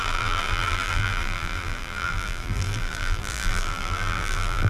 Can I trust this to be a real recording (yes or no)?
no